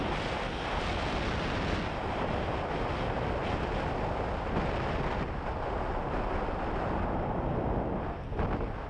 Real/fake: real